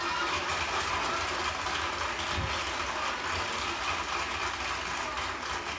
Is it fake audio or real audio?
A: real